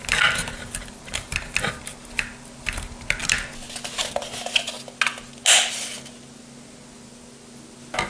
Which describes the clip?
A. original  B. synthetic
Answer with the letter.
A